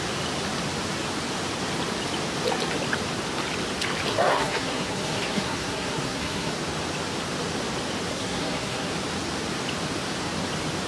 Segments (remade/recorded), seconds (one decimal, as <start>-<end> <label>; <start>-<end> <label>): 0.0-4.1 recorded; 4.1-6.5 remade; 6.5-8.1 recorded; 8.1-8.9 remade; 8.9-10.9 recorded